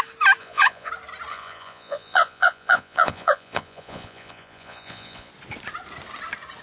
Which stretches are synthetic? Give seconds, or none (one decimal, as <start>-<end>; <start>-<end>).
0.4-0.9; 1.3-5.3